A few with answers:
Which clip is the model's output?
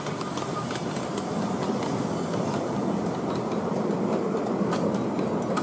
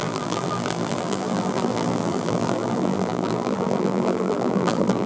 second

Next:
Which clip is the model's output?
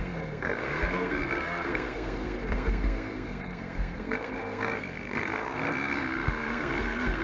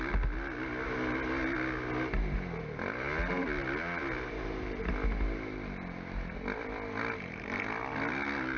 first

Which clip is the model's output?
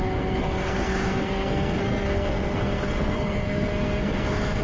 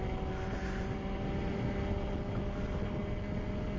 first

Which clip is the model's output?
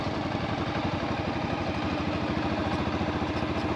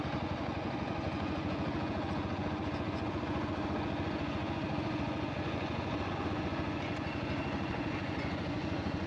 second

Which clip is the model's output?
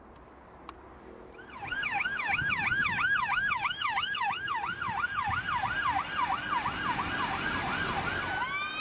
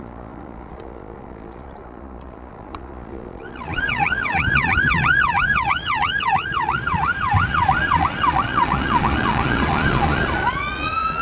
second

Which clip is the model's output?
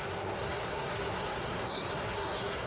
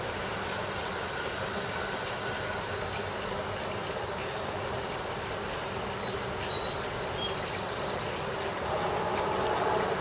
first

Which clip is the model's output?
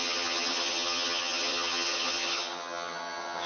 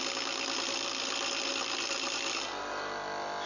first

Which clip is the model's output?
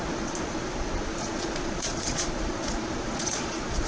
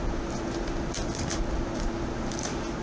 first